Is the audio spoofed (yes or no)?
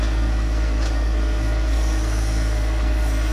yes